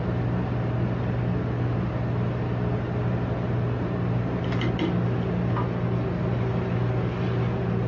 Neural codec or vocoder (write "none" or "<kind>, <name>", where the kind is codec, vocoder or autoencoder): none